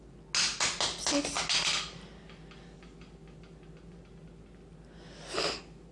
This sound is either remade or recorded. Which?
recorded